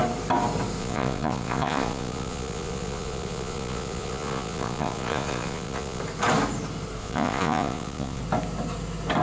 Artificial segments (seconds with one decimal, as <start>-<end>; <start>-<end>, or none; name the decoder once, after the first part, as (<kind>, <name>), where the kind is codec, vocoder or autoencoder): 0.8-6.0 (vocoder, Vocos); 7.0-8.2